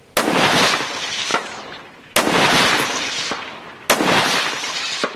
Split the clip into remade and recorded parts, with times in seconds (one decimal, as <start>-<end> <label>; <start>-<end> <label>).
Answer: 0.0-5.2 recorded